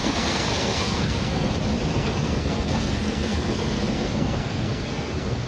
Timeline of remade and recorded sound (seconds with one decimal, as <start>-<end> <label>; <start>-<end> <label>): 0.0-1.5 remade; 1.5-1.9 recorded; 1.9-5.5 remade